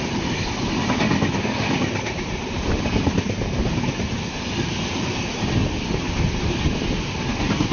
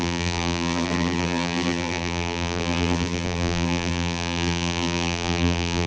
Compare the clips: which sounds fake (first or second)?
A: second